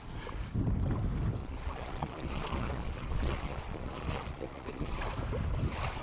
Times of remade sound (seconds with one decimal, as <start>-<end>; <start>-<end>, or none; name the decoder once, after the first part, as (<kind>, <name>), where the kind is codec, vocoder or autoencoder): 1.4-5.0 (vocoder, Vocos)

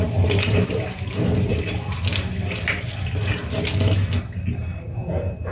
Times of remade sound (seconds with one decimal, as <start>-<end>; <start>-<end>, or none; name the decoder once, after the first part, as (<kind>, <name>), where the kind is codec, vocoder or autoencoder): 0.0-1.5 (vocoder, BigVGAN v2); 4.8-5.5